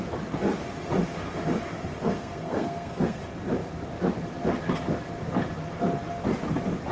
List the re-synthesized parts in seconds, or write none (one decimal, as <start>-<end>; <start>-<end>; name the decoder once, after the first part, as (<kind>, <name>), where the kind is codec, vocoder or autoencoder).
2.0-3.2 (codec, SNAC)